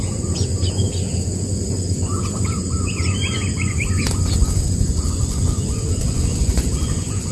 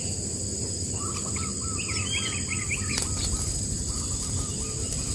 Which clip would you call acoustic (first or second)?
second